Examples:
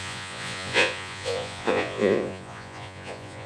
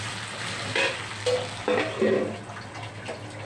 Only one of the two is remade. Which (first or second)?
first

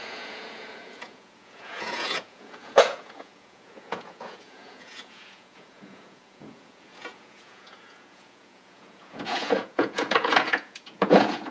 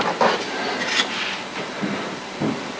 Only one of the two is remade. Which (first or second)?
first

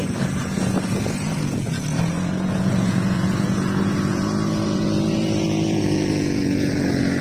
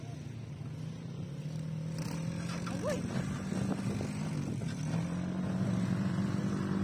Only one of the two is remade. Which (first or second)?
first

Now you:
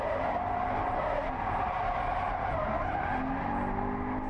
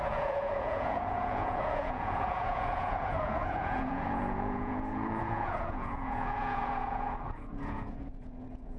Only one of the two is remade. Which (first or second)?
second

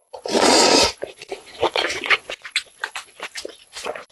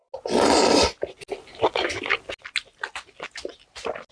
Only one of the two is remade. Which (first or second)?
first